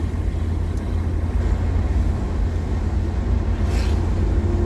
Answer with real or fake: real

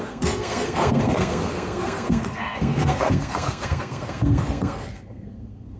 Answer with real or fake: fake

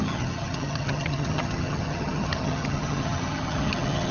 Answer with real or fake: fake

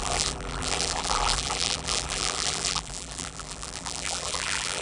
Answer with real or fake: fake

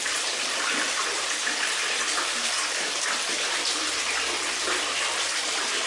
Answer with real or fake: fake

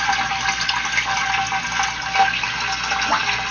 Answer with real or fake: real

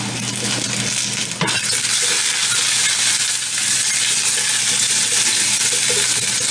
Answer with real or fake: real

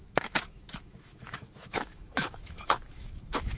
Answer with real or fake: fake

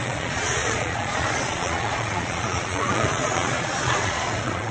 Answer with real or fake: fake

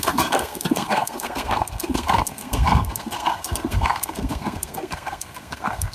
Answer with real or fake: fake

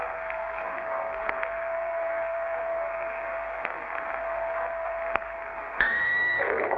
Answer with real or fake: fake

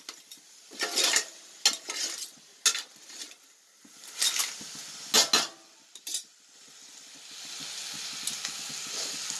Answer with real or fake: real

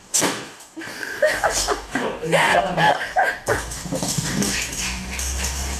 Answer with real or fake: fake